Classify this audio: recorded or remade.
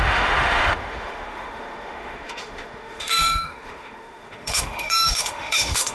remade